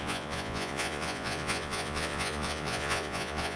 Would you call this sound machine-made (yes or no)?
yes